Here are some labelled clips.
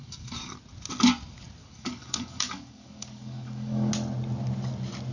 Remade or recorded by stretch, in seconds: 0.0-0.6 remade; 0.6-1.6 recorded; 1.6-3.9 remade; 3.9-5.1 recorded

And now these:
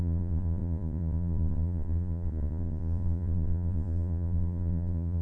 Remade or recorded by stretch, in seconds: 0.0-5.2 remade